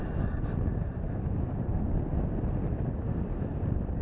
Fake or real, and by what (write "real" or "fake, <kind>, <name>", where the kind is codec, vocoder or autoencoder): real